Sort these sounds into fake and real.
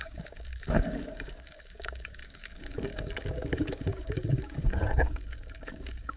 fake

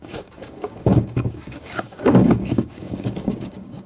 fake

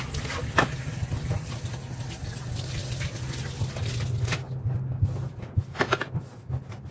real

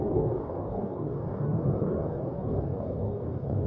fake